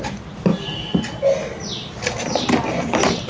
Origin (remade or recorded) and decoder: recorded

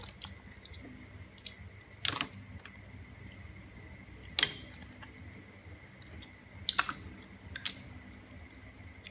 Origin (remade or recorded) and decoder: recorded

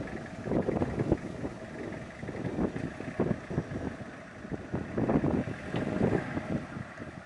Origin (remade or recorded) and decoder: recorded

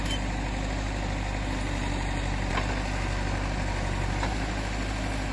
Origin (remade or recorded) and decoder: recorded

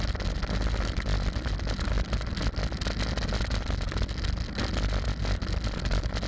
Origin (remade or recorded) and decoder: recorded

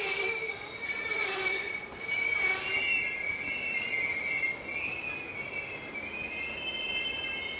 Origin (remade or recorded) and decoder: recorded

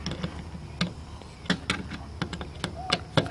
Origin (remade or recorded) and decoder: recorded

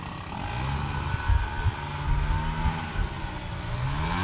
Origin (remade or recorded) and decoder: recorded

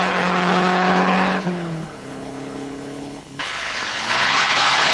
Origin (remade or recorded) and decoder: remade, codec, HILCodec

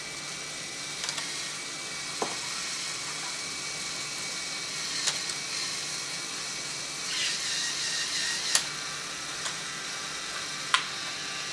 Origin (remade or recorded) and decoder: recorded